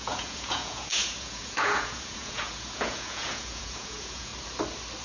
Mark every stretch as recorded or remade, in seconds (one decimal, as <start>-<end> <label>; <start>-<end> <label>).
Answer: 0.0-4.3 remade; 4.3-5.0 recorded